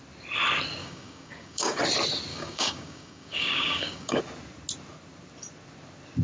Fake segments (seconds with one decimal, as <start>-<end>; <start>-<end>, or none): 0.8-1.8; 2.3-4.2